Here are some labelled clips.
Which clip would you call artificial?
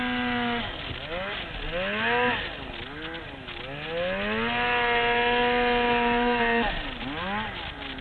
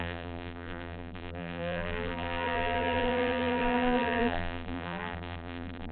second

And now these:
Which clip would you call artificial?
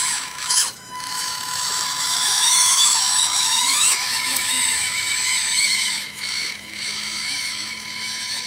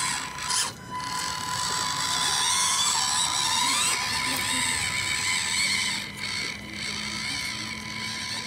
first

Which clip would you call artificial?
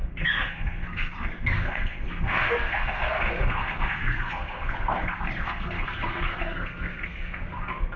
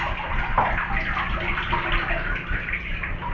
first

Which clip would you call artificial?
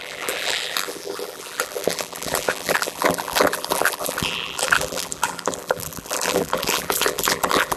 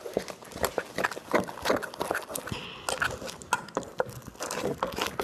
first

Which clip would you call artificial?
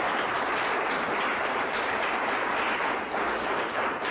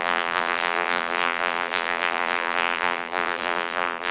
second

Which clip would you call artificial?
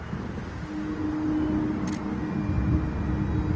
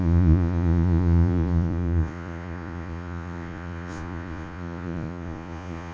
second